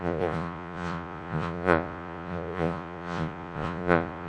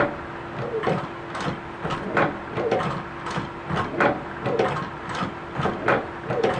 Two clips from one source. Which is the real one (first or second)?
second